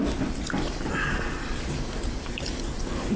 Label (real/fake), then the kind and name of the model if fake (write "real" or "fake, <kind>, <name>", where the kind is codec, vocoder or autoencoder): fake, vocoder, BigVGAN v2